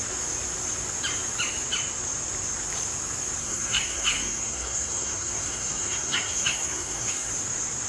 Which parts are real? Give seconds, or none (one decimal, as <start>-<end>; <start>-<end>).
0.0-3.4; 7.3-7.9